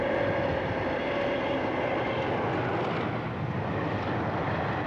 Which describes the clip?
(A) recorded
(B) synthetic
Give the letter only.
A